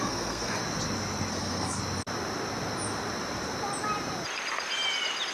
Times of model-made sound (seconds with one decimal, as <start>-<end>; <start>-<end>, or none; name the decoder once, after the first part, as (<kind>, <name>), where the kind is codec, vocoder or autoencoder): 0.0-0.6 (codec, SNAC); 1.3-1.8